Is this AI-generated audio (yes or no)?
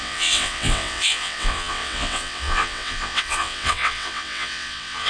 yes